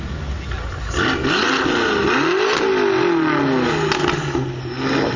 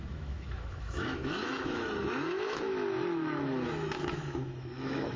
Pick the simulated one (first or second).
second